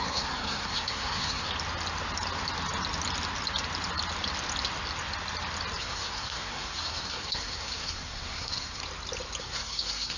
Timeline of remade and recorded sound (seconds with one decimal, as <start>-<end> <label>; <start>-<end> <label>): 0.0-1.5 remade; 1.5-5.8 recorded; 5.8-8.8 remade; 8.8-9.4 recorded; 9.4-10.2 remade